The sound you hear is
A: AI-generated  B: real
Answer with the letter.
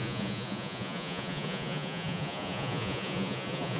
A